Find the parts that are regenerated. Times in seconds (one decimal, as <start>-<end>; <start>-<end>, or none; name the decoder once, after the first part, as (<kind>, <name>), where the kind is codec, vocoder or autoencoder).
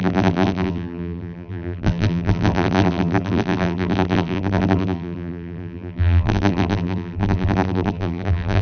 0.0-8.6 (vocoder, BigVGAN v2)